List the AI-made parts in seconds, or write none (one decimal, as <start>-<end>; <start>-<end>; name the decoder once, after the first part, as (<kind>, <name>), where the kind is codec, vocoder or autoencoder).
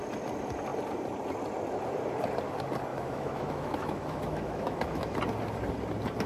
2.9-5.2 (autoencoder, DAC-VAE)